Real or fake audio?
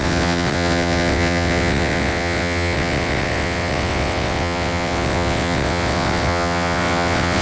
fake